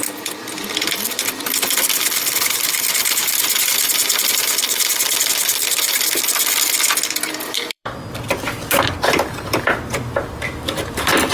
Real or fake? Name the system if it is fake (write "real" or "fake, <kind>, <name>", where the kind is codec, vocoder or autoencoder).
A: fake, vocoder, BigVGAN v2